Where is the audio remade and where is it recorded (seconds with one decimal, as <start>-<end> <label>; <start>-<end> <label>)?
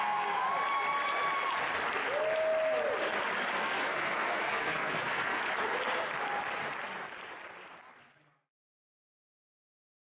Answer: 0.0-0.4 remade; 0.4-3.6 recorded; 3.6-5.4 remade; 5.4-9.1 recorded; 9.1-10.1 remade